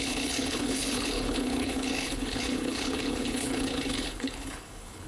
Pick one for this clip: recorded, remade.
remade